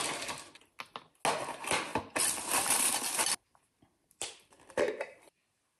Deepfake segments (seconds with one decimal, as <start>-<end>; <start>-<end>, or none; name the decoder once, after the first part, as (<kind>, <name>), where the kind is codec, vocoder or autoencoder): 1.9-4.9 (vocoder, BigVGAN v2)